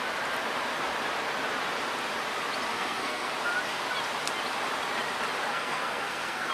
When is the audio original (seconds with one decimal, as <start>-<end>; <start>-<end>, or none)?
0.0-2.7; 3.3-5.5